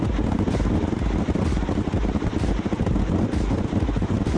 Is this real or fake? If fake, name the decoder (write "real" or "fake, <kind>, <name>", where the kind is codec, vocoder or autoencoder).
real